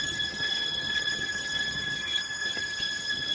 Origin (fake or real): fake